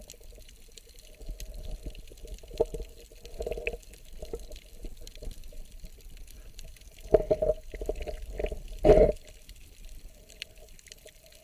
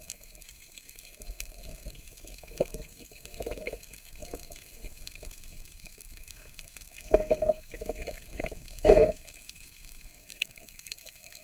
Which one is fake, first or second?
second